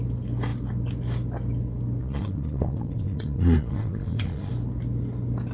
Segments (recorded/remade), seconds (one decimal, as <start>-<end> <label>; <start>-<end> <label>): 0.0-2.0 recorded; 2.0-4.5 remade; 4.5-5.5 recorded